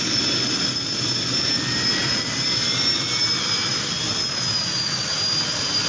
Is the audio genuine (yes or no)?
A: yes